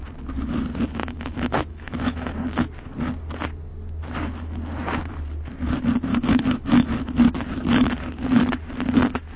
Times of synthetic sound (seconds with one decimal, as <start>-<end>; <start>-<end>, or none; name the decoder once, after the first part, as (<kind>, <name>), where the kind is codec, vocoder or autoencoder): 1.0-2.3 (autoencoder, DAC-VAE); 6.1-7.2